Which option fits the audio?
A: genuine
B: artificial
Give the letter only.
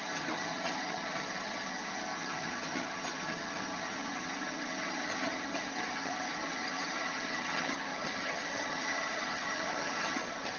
B